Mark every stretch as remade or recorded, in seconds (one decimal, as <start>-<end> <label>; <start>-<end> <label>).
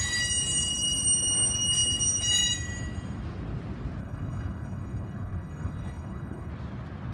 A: 0.0-4.0 recorded; 4.0-6.5 remade; 6.5-7.1 recorded